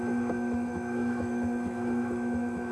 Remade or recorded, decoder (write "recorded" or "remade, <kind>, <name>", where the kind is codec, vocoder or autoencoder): remade, autoencoder, DAC-VAE